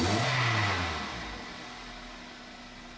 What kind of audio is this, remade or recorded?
recorded